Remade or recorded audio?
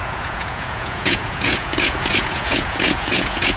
remade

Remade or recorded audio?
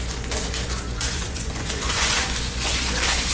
remade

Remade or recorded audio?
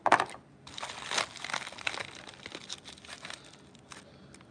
recorded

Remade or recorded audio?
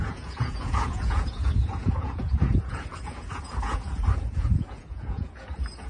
remade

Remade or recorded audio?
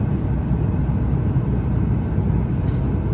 recorded